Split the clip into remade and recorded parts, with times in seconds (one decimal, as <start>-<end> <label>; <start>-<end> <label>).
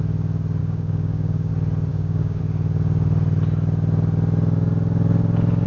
0.0-0.6 recorded; 0.6-1.5 remade; 1.5-1.9 recorded; 1.9-2.4 remade; 2.4-5.7 recorded